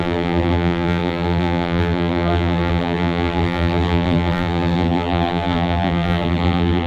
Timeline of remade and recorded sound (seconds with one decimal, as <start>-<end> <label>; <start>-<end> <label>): 0.0-6.9 remade